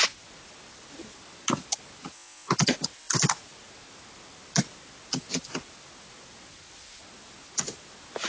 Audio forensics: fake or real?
real